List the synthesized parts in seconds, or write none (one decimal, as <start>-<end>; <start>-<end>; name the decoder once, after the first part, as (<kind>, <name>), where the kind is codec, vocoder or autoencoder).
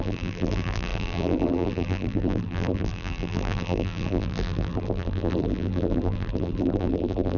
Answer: 0.0-7.4 (vocoder, BigVGAN v2)